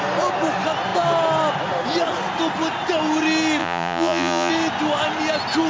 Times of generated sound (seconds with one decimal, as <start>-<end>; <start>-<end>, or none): 3.6-4.5